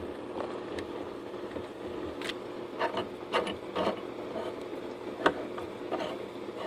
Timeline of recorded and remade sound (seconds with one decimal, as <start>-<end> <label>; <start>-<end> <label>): 0.0-6.7 recorded